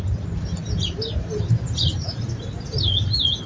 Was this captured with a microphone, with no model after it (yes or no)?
yes